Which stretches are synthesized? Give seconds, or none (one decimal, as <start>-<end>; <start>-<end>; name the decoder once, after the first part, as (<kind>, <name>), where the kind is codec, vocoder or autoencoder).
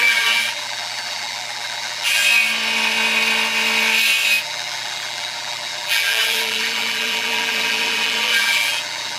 0.0-2.2 (vocoder, BigVGAN v2); 4.4-9.2